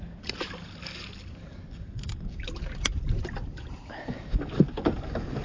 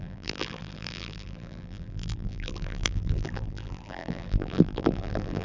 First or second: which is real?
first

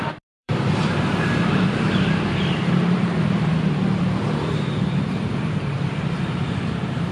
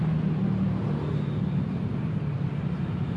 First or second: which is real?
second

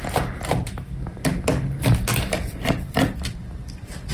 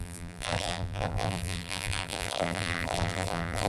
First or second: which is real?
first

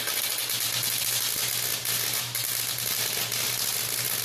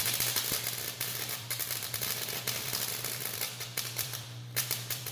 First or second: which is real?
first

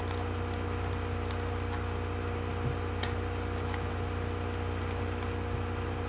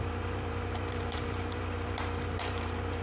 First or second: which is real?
first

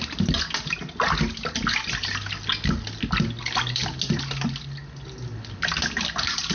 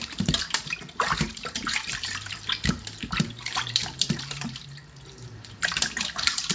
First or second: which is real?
first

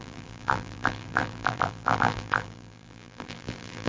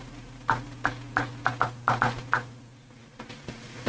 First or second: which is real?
second